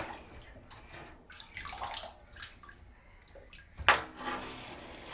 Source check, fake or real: real